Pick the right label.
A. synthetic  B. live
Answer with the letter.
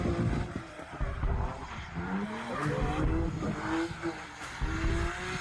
B